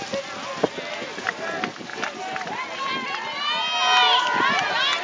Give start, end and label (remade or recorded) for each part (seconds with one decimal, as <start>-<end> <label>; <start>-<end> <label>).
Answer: 0.0-5.0 recorded